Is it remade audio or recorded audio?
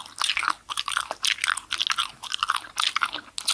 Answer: recorded